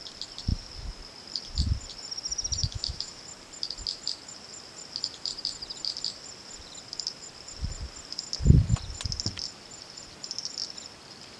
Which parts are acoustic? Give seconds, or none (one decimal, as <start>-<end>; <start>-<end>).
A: 0.0-2.6; 3.2-11.4